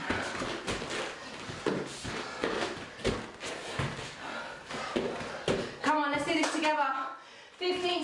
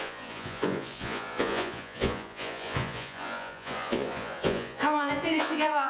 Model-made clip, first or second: second